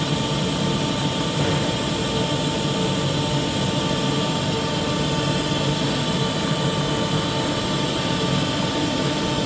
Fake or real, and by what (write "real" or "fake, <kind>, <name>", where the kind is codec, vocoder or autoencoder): real